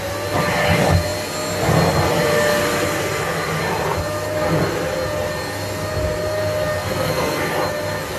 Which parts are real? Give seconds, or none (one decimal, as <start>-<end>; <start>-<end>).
0.0-6.7; 7.4-8.2